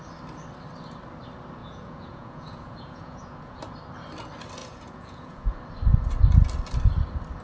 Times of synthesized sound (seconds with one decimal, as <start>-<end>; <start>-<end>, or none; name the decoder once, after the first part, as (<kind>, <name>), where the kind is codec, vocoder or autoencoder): 1.6-3.6 (vocoder, Vocos); 4.6-5.5